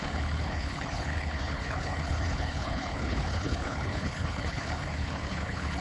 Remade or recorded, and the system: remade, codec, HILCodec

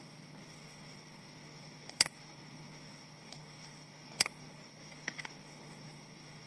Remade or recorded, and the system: remade, codec, HILCodec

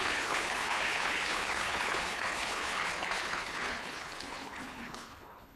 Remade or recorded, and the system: remade, codec, HILCodec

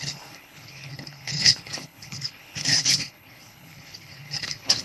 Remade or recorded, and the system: remade, codec, HILCodec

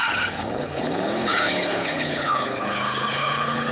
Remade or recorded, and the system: remade, codec, HILCodec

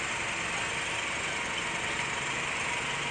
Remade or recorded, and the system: recorded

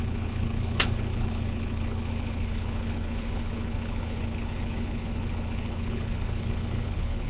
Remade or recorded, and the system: remade, codec, HILCodec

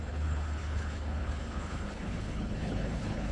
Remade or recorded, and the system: remade, codec, HILCodec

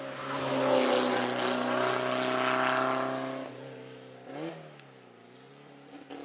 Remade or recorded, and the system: recorded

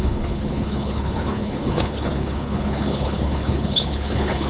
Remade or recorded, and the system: remade, codec, HILCodec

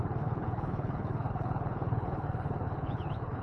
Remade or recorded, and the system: remade, codec, HILCodec